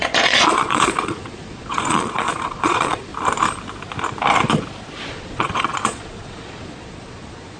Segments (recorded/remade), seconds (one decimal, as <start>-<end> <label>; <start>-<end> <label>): 0.0-3.1 remade; 3.1-5.1 recorded; 5.1-7.6 remade